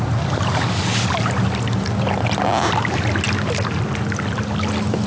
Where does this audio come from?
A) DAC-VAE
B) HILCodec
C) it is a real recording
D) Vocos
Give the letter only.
C